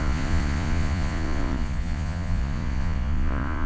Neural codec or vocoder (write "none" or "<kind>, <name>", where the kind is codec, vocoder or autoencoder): vocoder, Vocos